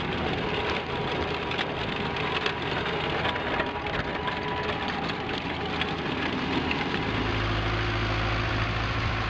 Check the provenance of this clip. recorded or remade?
recorded